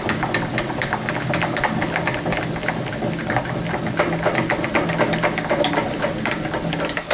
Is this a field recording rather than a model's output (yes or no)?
yes